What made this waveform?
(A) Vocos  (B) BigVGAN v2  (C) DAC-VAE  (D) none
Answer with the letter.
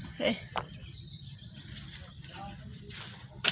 B